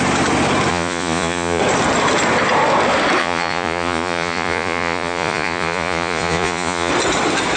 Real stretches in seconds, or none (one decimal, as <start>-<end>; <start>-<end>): 0.0-0.7; 1.6-3.2; 6.9-7.6